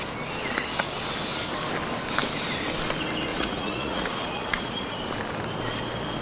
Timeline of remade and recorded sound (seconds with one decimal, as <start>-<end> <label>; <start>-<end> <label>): 0.0-3.3 recorded; 3.3-5.0 remade; 5.0-6.2 recorded